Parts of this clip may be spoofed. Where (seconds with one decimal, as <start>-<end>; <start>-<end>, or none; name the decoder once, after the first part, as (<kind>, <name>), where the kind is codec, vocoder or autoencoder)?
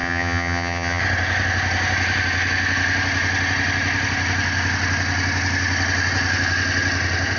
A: 0.0-1.0 (vocoder, HiFi-GAN)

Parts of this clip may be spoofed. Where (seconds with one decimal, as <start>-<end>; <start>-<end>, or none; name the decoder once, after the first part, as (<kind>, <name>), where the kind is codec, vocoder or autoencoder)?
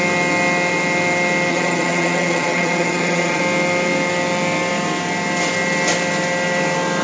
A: 1.5-3.4 (vocoder, HiFi-GAN)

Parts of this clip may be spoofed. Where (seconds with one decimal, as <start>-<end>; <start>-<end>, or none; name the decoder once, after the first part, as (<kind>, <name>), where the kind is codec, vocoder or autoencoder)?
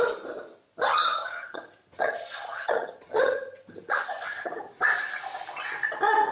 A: 0.9-4.7 (vocoder, HiFi-GAN)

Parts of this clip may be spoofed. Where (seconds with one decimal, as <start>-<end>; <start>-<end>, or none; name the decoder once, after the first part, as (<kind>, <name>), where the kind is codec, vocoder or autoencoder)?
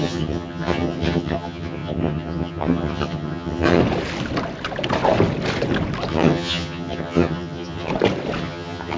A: 0.0-3.8 (vocoder, HiFi-GAN); 6.1-7.9; 8.4-9.0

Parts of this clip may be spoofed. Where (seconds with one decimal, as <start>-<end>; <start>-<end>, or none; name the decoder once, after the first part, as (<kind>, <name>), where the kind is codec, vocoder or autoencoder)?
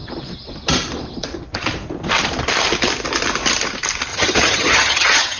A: 4.1-5.4 (vocoder, HiFi-GAN)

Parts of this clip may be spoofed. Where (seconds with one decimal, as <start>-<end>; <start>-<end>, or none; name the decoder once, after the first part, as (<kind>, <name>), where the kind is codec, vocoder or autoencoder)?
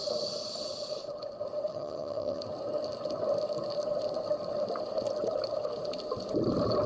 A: 1.7-2.4 (vocoder, HiFi-GAN)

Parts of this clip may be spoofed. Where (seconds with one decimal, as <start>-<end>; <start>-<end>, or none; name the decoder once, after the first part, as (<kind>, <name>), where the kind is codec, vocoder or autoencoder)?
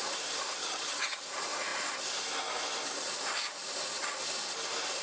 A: 0.6-1.2 (vocoder, HiFi-GAN)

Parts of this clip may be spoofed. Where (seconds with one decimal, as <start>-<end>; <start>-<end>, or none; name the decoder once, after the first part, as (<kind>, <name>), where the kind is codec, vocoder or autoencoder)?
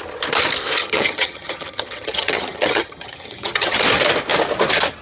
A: 0.8-3.8 (vocoder, HiFi-GAN)